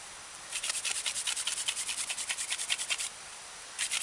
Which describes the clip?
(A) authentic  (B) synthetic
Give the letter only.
A